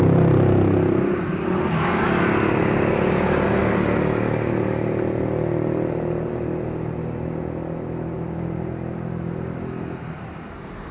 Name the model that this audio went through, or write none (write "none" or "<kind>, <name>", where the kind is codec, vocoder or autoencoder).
none